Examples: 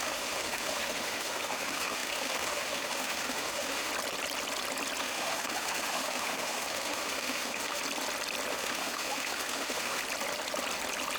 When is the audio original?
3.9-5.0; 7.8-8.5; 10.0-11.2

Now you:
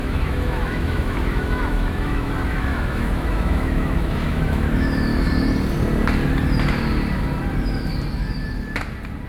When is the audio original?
5.1-9.3